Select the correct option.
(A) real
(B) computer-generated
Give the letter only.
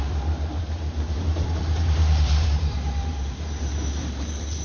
B